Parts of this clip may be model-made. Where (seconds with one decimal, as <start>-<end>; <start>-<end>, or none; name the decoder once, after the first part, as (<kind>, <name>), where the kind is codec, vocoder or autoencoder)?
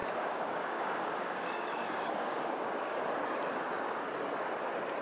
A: 0.0-3.0 (codec, DAC)